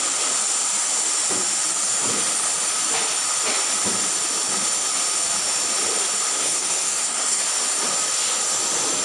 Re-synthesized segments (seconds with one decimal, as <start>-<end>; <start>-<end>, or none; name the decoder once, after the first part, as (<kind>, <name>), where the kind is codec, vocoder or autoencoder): 6.3-7.4 (codec, SNAC)